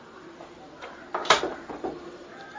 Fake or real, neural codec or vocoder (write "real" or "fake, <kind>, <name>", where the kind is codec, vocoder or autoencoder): fake, vocoder, BigVGAN v2